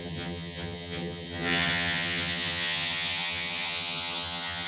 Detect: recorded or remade remade